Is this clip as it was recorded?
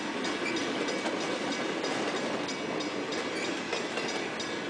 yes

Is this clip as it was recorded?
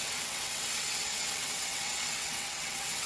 no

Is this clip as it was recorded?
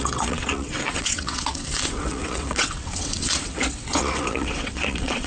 no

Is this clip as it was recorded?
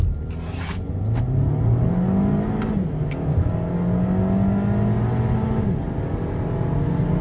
yes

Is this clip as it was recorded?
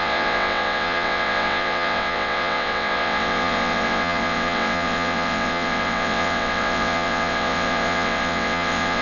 no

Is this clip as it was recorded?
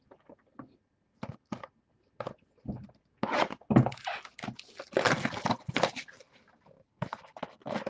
yes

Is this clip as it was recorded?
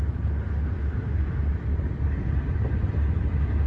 yes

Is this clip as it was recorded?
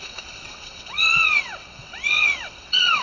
no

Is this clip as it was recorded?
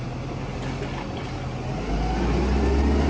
yes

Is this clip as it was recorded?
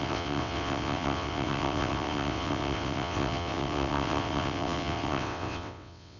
no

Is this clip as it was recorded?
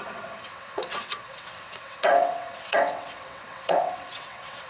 no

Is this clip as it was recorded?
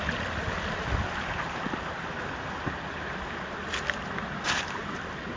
yes